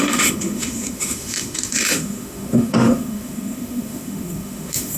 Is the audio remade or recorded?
remade